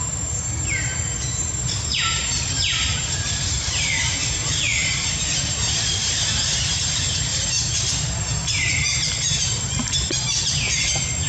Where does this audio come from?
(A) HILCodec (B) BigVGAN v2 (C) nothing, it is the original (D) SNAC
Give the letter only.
B